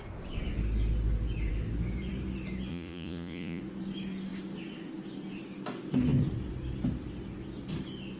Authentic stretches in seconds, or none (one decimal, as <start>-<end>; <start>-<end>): 0.0-2.7; 3.6-8.2